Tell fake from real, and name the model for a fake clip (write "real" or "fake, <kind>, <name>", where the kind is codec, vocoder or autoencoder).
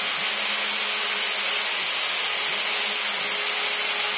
real